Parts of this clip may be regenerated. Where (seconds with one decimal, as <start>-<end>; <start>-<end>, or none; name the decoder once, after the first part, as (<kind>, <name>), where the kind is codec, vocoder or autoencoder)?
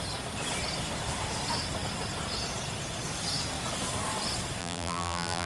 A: 4.6-5.5 (vocoder, BigVGAN v2)